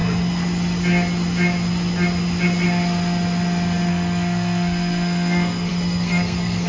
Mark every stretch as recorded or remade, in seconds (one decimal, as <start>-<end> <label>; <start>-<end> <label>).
0.0-3.9 recorded; 3.9-6.7 remade